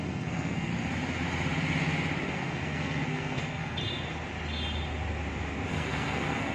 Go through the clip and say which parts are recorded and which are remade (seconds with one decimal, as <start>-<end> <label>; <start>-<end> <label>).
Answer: 0.0-0.7 remade; 0.7-2.3 recorded; 2.3-3.8 remade; 3.8-5.7 recorded; 5.7-6.5 remade